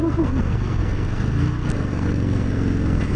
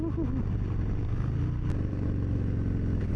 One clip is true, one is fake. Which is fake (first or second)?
first